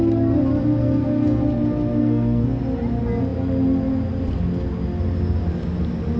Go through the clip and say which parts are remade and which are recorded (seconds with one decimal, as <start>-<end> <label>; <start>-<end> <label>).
0.0-0.8 recorded; 0.8-1.4 remade; 1.4-2.0 recorded; 2.0-2.6 remade; 2.6-6.2 recorded